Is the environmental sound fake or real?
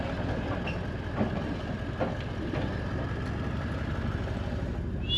real